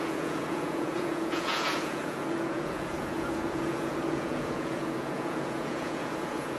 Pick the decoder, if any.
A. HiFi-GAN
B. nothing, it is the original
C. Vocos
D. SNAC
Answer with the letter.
C